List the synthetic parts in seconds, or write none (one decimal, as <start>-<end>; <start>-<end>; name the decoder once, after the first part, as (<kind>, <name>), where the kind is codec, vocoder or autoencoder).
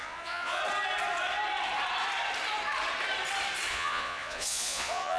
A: 0.0-0.6 (vocoder, Vocos); 3.7-5.2